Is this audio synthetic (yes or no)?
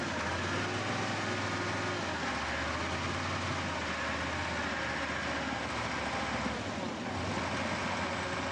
no